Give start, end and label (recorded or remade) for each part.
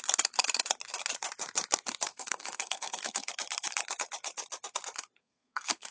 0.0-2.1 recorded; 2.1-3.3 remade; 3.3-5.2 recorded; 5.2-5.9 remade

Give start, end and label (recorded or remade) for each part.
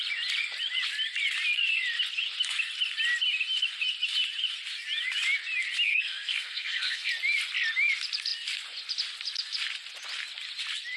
0.0-5.9 recorded; 5.9-7.1 remade; 7.1-11.0 recorded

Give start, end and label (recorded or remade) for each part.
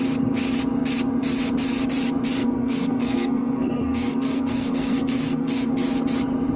0.0-2.4 recorded; 2.4-5.7 remade; 5.7-6.6 recorded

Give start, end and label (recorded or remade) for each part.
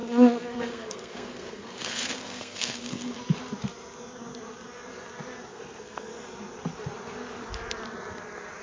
0.0-3.2 remade; 3.2-5.5 recorded; 5.5-6.1 remade; 6.1-8.6 recorded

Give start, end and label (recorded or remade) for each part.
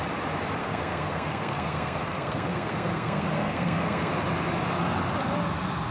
0.0-0.6 recorded; 0.6-4.1 remade; 4.1-5.9 recorded